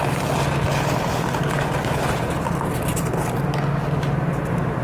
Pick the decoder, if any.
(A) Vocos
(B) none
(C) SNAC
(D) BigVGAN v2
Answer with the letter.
B